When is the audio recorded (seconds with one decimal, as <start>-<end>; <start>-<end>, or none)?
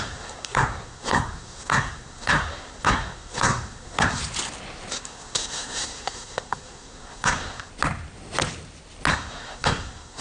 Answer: 4.2-4.9; 7.7-9.1